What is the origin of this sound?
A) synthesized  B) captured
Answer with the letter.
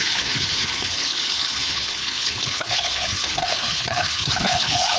A